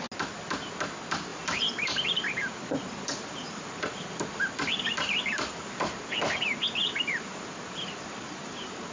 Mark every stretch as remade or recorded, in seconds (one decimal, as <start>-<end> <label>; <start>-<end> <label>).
0.0-1.3 recorded; 1.3-5.8 remade; 5.8-6.8 recorded; 6.8-8.9 remade